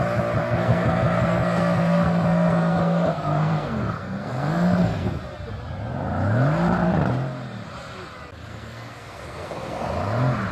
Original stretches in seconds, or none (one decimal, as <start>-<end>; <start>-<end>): 0.0-0.4; 5.2-8.5; 9.9-10.5